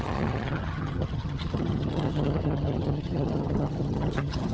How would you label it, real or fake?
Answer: fake